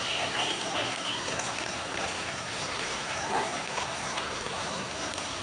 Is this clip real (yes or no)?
no